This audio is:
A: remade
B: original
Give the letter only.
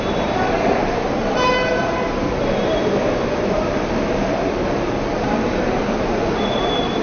A